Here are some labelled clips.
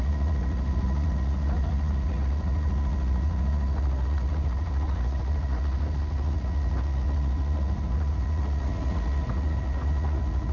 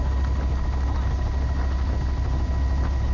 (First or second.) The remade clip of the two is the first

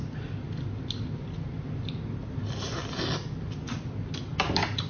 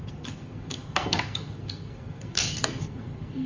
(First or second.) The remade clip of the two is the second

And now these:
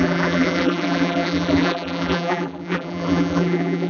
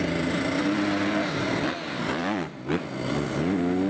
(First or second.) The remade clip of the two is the first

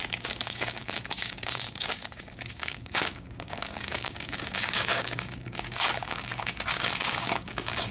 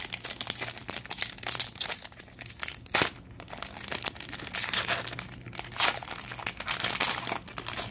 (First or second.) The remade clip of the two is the first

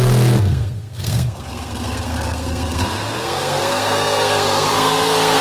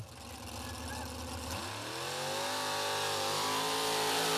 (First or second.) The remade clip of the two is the first